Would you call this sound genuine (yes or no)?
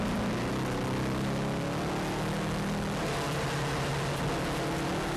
yes